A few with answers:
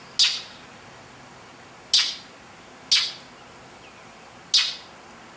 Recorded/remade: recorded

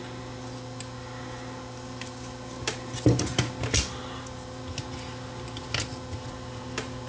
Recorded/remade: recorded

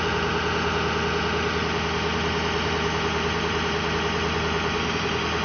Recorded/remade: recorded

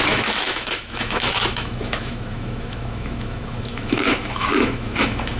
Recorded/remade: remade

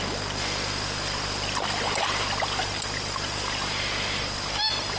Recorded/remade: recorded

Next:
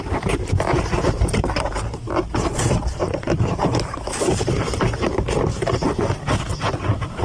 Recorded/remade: recorded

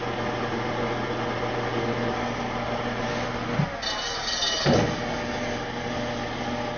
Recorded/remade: recorded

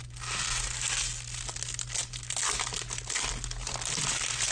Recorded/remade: recorded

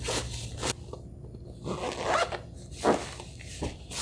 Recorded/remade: recorded